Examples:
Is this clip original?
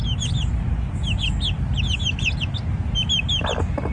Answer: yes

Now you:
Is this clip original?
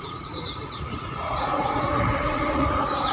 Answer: no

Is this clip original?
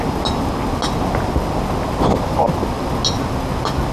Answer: yes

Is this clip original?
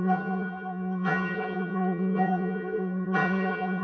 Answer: no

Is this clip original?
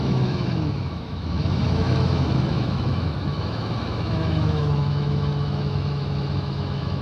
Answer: no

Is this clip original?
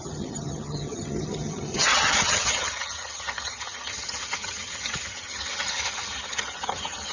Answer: no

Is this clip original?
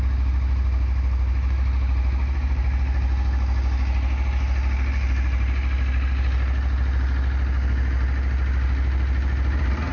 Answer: yes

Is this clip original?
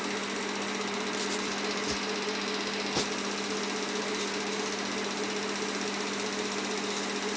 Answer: yes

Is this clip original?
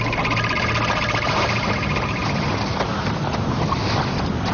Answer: yes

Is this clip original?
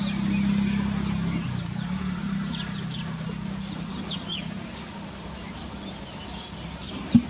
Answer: yes